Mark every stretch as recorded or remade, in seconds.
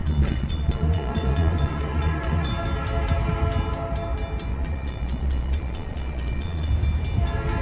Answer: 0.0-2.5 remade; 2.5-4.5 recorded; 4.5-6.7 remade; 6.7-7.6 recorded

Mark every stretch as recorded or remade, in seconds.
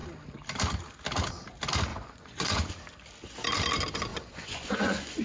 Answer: 0.0-1.9 recorded; 1.9-2.7 remade; 2.7-4.1 recorded; 4.1-5.2 remade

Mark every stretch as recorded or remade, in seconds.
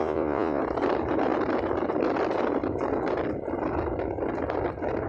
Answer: 0.0-0.6 remade; 0.6-5.1 recorded